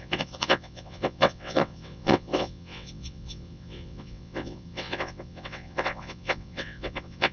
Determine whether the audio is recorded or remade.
remade